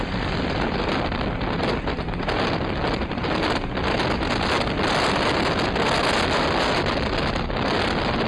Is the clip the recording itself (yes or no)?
yes